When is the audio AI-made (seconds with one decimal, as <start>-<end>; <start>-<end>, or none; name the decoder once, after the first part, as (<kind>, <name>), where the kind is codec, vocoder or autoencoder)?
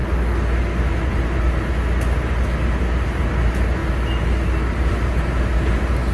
none